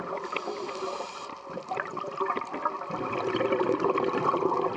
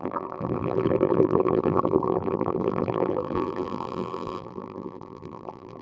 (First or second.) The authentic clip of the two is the first